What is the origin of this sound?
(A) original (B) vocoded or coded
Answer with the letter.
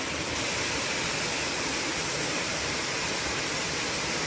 A